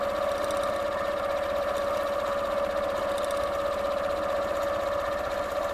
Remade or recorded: recorded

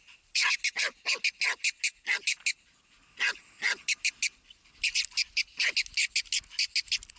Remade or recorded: recorded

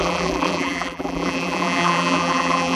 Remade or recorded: remade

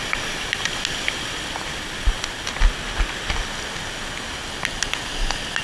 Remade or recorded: recorded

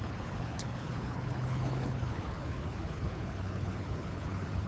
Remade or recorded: remade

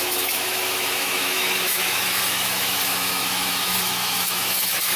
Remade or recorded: remade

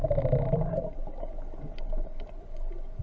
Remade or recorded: recorded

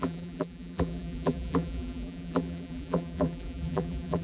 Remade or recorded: remade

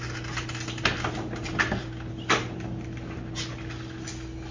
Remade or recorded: recorded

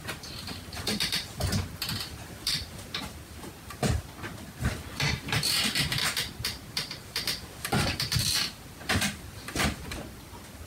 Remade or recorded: remade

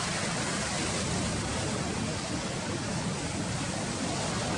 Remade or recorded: recorded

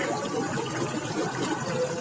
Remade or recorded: recorded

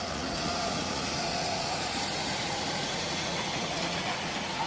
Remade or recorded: remade